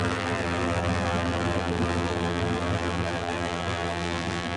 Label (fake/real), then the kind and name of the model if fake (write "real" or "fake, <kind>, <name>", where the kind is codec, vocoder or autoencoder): fake, vocoder, BigVGAN v2